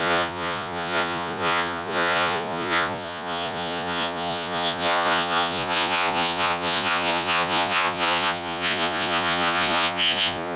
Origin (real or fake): fake